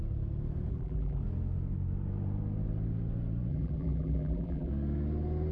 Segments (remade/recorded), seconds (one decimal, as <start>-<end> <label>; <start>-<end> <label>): 0.0-0.7 recorded; 0.7-1.2 remade; 1.2-3.5 recorded; 3.5-4.7 remade; 4.7-5.5 recorded